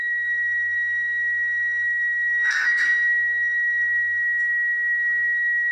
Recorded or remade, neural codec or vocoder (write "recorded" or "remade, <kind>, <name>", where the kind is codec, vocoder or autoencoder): remade, codec, SNAC